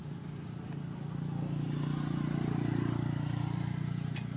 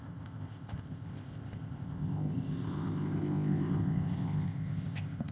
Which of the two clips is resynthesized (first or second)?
second